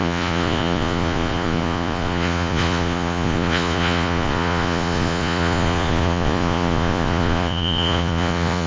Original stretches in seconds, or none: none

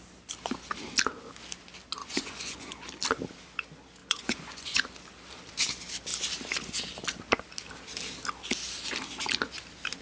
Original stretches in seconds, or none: 0.0-2.0; 2.9-4.0; 4.9-10.0

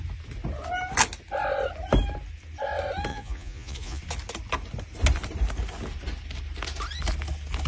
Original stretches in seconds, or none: 0.0-3.1; 4.0-7.7

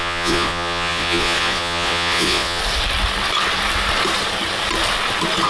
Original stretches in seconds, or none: 2.6-5.5